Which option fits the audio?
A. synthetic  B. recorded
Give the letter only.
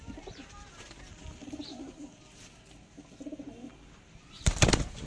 B